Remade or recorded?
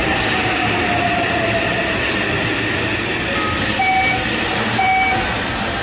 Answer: recorded